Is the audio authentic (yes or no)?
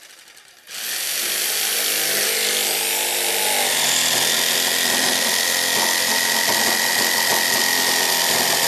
yes